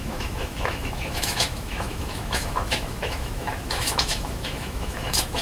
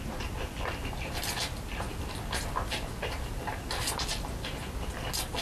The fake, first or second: first